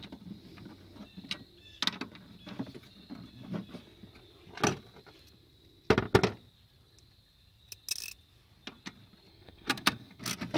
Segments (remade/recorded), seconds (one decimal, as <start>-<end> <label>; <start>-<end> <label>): 0.0-9.3 recorded; 9.3-10.2 remade; 10.2-10.6 recorded